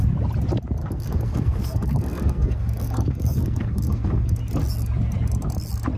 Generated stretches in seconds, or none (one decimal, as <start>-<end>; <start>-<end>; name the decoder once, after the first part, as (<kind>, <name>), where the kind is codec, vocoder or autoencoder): 0.8-4.4 (codec, SNAC)